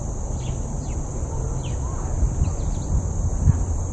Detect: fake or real real